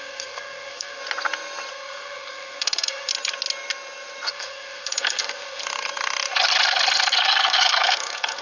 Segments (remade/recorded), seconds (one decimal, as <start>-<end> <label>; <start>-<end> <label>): 0.0-1.0 remade; 1.0-1.7 recorded; 1.7-3.1 remade; 3.1-4.3 recorded; 4.3-5.6 remade; 5.6-7.2 recorded; 7.2-8.4 remade